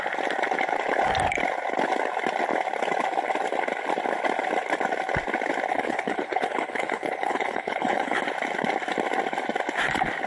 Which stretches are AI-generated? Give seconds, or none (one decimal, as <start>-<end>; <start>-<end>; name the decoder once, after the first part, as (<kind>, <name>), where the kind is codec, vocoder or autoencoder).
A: 5.7-8.2 (codec, HILCodec)